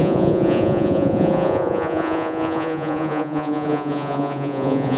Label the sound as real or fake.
fake